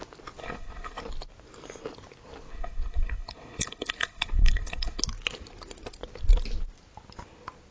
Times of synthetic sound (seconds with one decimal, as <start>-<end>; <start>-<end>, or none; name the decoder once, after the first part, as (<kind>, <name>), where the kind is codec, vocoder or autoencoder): 0.4-1.0 (codec, HILCodec); 2.5-5.0